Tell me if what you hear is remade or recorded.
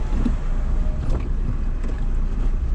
recorded